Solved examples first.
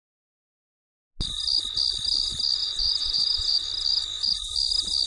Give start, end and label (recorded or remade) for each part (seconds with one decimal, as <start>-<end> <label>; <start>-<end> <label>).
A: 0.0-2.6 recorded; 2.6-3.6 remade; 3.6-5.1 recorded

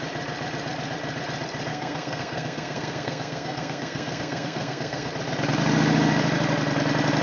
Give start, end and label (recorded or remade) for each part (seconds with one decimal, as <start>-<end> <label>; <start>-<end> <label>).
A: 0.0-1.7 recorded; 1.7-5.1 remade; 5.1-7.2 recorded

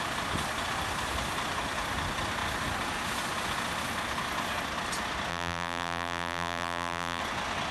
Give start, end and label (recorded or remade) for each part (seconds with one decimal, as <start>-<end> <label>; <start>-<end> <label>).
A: 0.0-5.3 recorded; 5.3-7.2 remade; 7.2-7.7 recorded

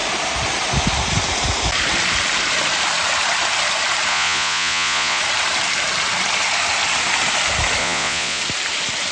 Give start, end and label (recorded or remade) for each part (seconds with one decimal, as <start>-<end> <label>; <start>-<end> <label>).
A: 0.0-4.1 recorded; 4.1-5.2 remade; 5.2-7.8 recorded; 7.8-8.4 remade; 8.4-9.1 recorded

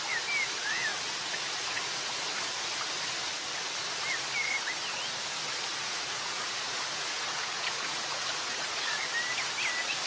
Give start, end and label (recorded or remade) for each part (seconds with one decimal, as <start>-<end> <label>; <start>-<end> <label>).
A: 0.0-0.9 recorded; 0.9-2.7 remade; 2.7-5.7 recorded; 5.7-9.1 remade; 9.1-10.1 recorded

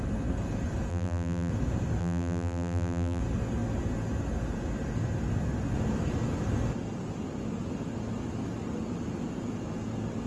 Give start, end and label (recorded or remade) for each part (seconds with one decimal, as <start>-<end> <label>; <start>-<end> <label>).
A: 0.0-0.9 recorded; 0.9-1.5 remade; 1.5-2.0 recorded; 2.0-3.2 remade; 3.2-10.3 recorded

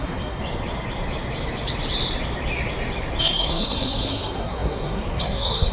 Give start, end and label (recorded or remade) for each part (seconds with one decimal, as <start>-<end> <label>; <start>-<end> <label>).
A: 0.0-0.4 remade; 0.4-3.2 recorded; 3.2-5.7 remade

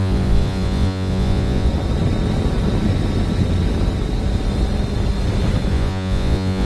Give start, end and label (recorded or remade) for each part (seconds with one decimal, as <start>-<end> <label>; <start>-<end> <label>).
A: 0.0-1.7 remade; 1.7-5.7 recorded; 5.7-6.6 remade